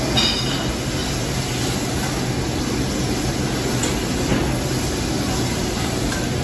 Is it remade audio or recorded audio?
recorded